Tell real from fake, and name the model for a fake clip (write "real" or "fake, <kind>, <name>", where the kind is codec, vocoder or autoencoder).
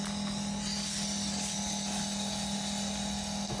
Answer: real